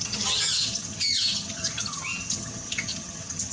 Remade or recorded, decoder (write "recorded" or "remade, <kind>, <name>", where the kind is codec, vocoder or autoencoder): remade, vocoder, HiFi-GAN